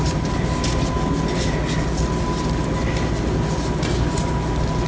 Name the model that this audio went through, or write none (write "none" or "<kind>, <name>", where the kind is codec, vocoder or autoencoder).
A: none